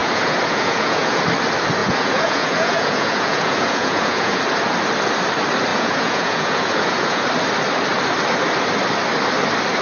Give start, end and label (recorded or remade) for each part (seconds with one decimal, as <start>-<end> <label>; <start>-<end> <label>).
0.0-1.2 remade; 1.2-1.8 recorded; 1.8-4.4 remade; 4.4-5.7 recorded; 5.7-7.2 remade; 7.2-9.8 recorded